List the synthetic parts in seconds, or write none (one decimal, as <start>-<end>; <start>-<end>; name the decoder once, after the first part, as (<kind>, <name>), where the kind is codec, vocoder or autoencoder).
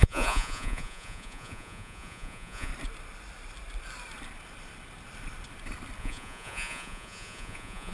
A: 0.0-2.7 (vocoder, Vocos); 6.0-7.9